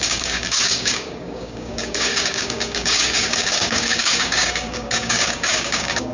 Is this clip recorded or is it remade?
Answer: remade